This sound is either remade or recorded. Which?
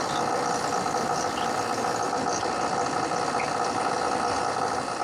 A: recorded